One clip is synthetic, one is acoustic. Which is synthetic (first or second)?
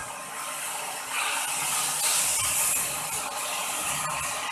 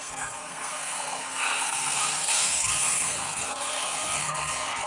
second